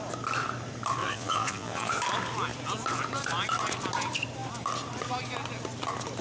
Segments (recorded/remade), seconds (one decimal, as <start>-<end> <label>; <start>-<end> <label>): 0.0-1.0 recorded; 1.0-1.9 remade; 1.9-6.2 recorded